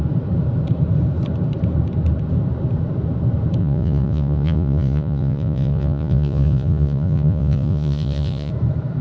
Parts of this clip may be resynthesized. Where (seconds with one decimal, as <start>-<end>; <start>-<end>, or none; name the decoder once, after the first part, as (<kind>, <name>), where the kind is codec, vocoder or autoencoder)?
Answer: 3.6-8.5 (vocoder, Vocos)